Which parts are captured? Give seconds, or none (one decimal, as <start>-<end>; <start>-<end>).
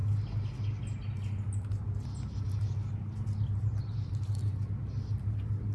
0.0-5.7